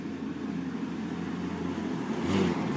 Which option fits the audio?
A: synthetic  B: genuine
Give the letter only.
B